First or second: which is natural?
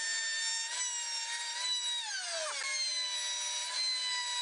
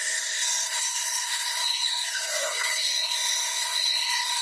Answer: first